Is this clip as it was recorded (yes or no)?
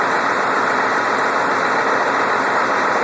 no